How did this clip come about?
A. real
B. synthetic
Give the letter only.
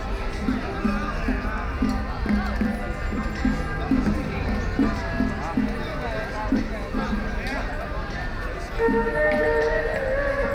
A